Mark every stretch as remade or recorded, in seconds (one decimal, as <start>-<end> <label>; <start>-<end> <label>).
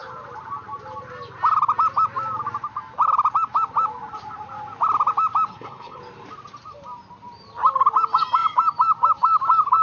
0.0-5.5 recorded; 5.5-6.0 remade; 6.0-9.8 recorded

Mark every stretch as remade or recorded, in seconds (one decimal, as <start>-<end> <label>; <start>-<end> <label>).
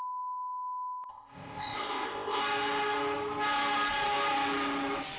0.0-1.1 recorded; 1.1-2.4 remade; 2.4-5.2 recorded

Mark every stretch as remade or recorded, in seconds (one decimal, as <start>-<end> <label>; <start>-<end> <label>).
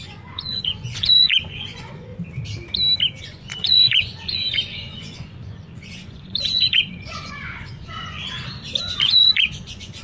0.0-2.1 remade; 2.1-3.2 recorded; 3.2-8.2 remade; 8.2-8.8 recorded; 8.8-10.0 remade